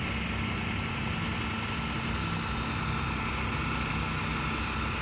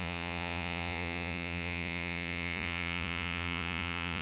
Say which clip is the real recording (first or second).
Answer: first